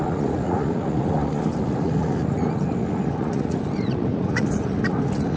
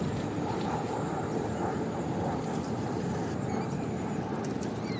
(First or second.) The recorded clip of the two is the second